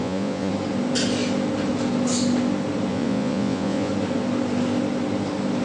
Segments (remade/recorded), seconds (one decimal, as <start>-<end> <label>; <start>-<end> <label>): 0.0-0.5 remade; 0.5-2.9 recorded; 2.9-3.9 remade; 3.9-5.6 recorded